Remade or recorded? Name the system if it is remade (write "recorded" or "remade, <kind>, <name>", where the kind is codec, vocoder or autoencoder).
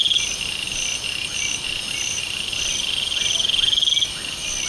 recorded